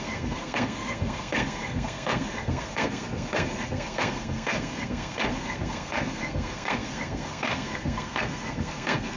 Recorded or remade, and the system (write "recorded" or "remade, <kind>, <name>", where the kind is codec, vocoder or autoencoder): remade, codec, SNAC